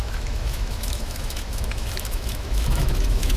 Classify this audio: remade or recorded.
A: remade